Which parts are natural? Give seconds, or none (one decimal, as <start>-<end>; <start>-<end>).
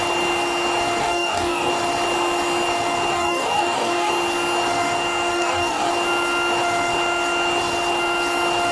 0.0-1.0; 1.7-3.1; 4.1-5.3; 5.9-8.7